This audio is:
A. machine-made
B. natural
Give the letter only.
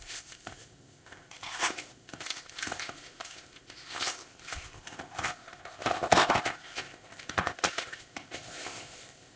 A